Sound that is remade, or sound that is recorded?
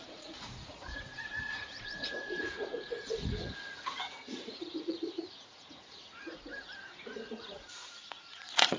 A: remade